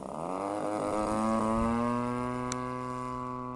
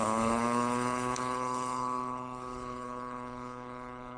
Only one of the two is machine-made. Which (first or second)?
second